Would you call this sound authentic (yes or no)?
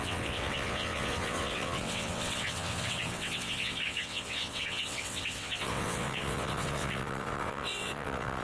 no